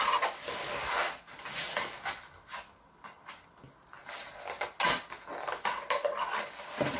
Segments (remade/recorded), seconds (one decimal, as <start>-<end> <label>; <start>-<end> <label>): 0.0-7.0 recorded